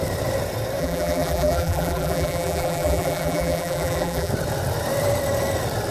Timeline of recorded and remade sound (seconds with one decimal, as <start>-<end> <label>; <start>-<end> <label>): 0.0-0.8 recorded; 0.8-4.3 remade; 4.3-5.9 recorded